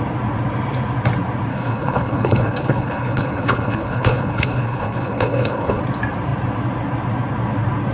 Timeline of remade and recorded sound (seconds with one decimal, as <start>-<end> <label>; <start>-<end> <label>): 0.0-1.5 recorded; 1.5-5.8 remade; 5.8-7.9 recorded